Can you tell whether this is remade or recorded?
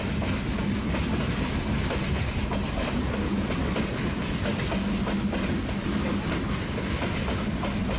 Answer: recorded